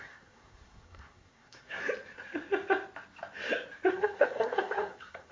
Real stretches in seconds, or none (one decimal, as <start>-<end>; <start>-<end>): 1.8-3.9